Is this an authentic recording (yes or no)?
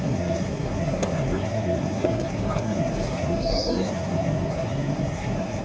no